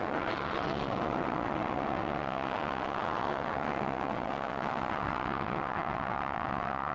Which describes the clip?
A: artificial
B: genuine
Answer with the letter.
A